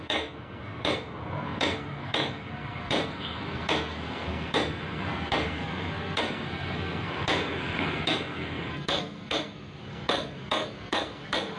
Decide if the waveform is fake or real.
fake